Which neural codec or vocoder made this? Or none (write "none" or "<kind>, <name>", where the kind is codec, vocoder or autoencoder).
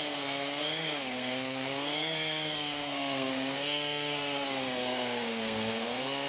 codec, SNAC